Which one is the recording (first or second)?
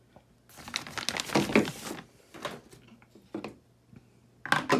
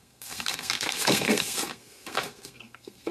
first